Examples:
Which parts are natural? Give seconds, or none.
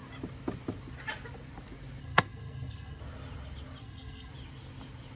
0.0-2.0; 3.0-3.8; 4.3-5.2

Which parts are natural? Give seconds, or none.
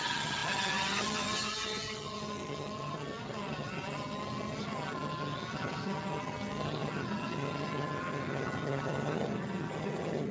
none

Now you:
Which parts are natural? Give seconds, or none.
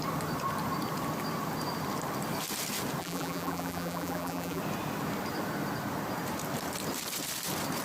0.0-3.0; 4.6-7.8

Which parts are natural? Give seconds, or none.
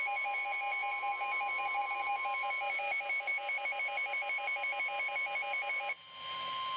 0.0-6.8